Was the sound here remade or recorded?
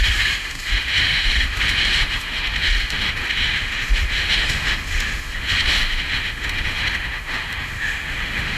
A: remade